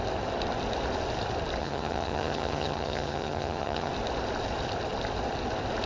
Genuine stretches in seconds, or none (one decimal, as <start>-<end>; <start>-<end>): 0.0-1.6; 3.9-5.9